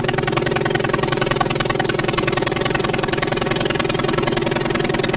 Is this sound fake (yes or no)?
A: yes